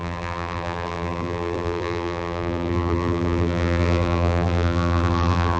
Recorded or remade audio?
remade